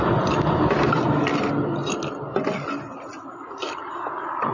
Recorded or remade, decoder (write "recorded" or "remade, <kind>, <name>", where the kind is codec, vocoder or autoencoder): recorded